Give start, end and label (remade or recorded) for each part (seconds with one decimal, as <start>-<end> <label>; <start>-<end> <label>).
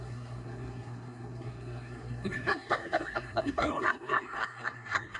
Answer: 0.0-5.2 remade